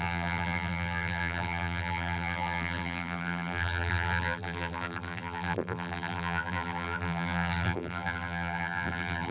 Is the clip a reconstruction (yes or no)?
yes